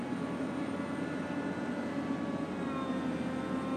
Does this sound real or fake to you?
real